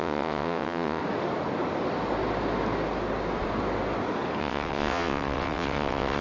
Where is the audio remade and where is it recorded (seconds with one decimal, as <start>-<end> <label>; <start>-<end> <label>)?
0.0-1.0 remade; 1.0-4.4 recorded; 4.4-6.2 remade